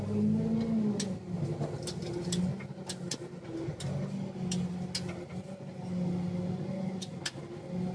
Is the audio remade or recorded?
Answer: recorded